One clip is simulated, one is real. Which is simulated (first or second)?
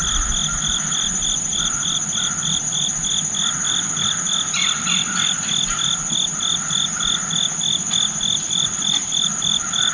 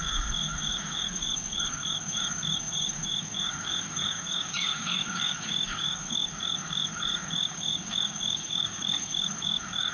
second